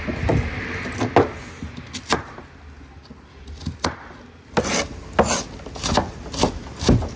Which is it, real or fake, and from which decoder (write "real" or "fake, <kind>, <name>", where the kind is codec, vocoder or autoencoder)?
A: real